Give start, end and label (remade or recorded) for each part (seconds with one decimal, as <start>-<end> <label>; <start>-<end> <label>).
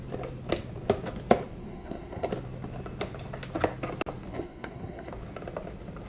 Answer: 0.0-1.6 recorded; 1.6-2.3 remade; 2.3-4.3 recorded; 4.3-5.1 remade; 5.1-6.1 recorded